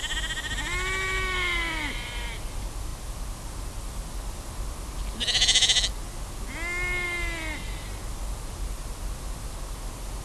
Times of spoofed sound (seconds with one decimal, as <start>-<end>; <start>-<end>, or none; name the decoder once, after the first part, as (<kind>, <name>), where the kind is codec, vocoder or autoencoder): none